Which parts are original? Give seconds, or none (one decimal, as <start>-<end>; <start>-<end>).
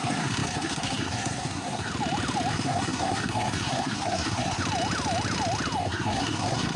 1.9-2.5; 4.6-5.8